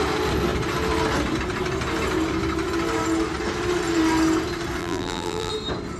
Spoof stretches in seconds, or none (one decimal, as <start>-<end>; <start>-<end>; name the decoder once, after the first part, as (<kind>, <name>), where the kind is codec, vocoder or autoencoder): 4.8-5.5 (vocoder, BigVGAN v2)